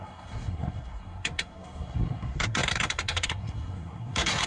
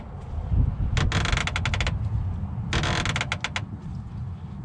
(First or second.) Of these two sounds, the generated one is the first